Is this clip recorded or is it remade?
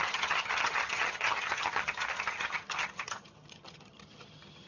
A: remade